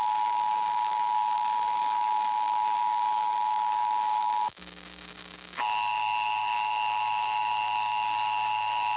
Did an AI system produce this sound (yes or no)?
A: yes